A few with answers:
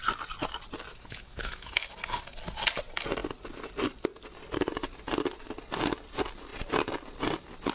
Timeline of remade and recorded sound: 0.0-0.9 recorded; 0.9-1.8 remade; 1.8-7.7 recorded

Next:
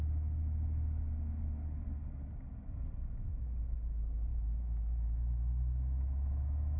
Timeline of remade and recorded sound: 0.0-4.3 recorded; 4.3-6.8 remade

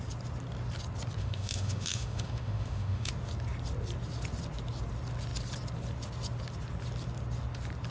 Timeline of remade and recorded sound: 0.0-1.2 recorded; 1.2-3.1 remade; 3.1-7.9 recorded

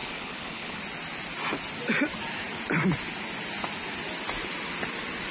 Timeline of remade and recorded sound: 0.0-0.8 remade; 0.8-5.3 recorded

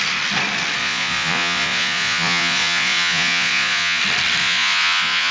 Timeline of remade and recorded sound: 0.0-0.8 recorded; 0.8-4.0 remade; 4.0-4.4 recorded; 4.4-5.3 remade

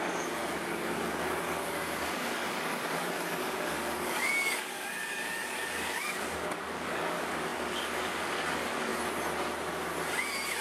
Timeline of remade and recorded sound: 0.0-8.9 remade; 8.9-10.6 recorded

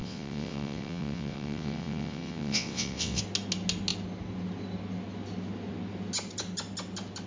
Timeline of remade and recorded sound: 0.0-3.2 remade; 3.2-7.3 recorded

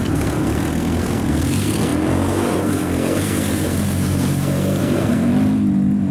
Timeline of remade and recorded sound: 0.0-5.3 remade; 5.3-6.1 recorded